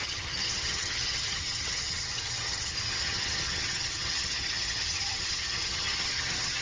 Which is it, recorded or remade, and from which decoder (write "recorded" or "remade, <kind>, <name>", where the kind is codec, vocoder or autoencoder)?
remade, vocoder, HiFi-GAN